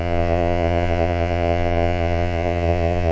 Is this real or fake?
fake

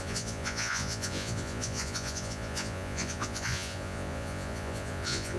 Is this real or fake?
fake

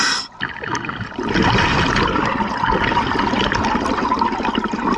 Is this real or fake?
real